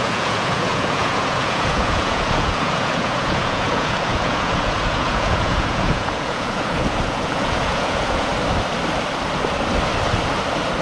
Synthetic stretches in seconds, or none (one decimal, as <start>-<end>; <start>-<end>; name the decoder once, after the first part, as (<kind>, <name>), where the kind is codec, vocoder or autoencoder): 0.0-8.3 (vocoder, Vocos)